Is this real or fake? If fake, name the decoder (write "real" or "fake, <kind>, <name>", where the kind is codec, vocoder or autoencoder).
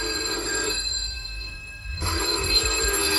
fake, codec, SNAC